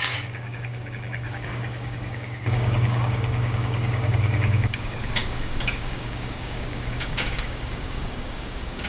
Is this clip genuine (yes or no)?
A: no